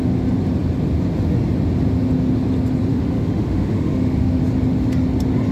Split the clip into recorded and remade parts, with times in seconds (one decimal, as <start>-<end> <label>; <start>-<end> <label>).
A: 0.0-2.9 recorded; 2.9-4.4 remade; 4.4-5.5 recorded